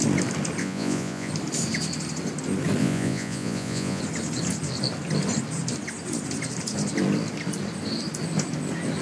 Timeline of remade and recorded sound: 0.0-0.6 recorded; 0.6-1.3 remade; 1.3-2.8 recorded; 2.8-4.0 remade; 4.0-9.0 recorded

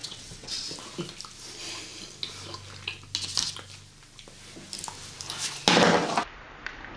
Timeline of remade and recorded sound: 0.0-0.7 remade; 0.7-7.0 recorded

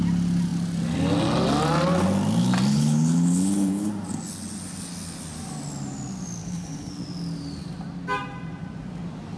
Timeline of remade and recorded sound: 0.0-2.7 recorded; 2.7-3.9 remade; 3.9-6.4 recorded; 6.4-6.9 remade; 6.9-9.4 recorded

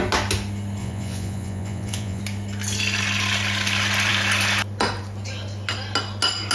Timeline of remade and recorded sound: 0.0-0.8 recorded; 0.8-2.2 remade; 2.2-6.5 recorded

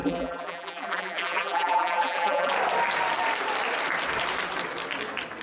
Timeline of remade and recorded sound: 0.0-2.5 remade; 2.5-5.4 recorded